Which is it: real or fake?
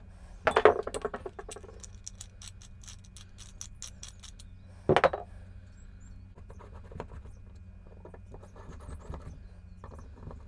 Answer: real